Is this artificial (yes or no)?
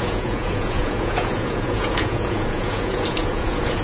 yes